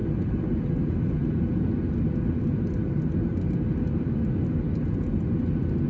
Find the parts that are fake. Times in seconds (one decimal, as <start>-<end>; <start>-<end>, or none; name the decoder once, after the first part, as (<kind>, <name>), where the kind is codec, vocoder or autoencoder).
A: none